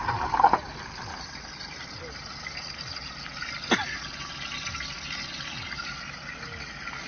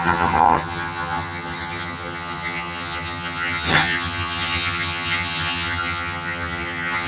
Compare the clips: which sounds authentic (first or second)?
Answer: first